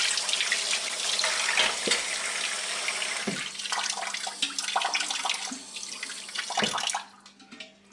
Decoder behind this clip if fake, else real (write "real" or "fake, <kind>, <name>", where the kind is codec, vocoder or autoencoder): real